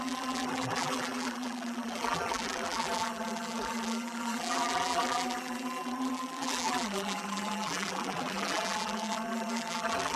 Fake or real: fake